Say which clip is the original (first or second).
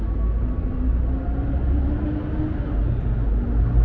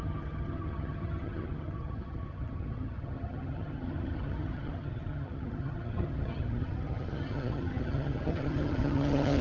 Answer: first